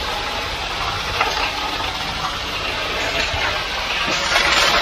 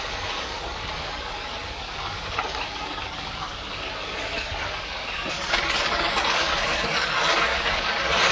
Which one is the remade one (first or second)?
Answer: second